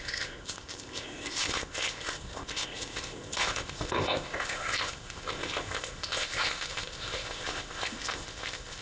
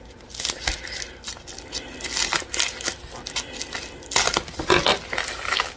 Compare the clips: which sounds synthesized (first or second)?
first